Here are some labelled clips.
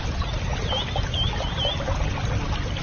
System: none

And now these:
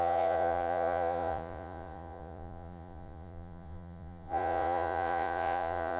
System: vocoder, Vocos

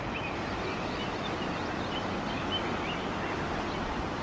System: none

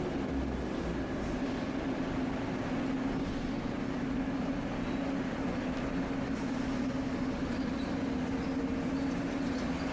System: none